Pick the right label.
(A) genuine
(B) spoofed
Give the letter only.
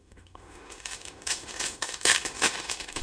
B